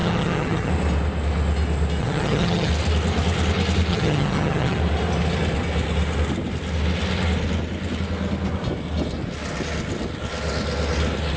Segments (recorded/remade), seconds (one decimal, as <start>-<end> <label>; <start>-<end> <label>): 0.0-0.7 remade; 0.7-2.0 recorded; 2.0-2.7 remade; 2.7-3.9 recorded; 3.9-4.8 remade; 4.8-11.4 recorded